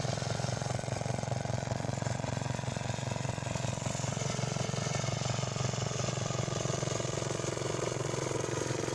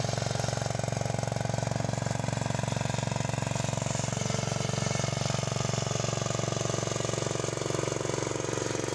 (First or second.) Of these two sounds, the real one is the second